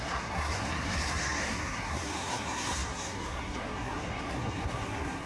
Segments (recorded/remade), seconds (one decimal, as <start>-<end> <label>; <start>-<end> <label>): 0.0-5.3 remade